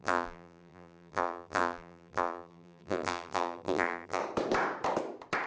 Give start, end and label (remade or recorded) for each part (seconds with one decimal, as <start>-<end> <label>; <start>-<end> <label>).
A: 0.0-4.2 remade; 4.2-5.5 recorded